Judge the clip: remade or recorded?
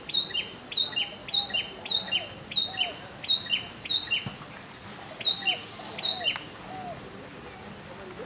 recorded